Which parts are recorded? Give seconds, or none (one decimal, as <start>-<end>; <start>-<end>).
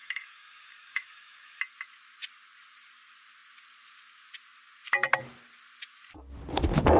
1.6-7.0